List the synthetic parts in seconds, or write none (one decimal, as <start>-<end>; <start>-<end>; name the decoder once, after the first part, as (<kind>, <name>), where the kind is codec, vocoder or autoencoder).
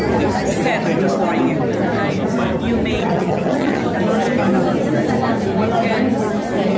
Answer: 3.0-3.8 (vocoder, HiFi-GAN)